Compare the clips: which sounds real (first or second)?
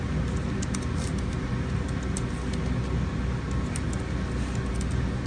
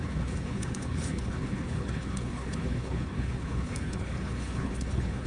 first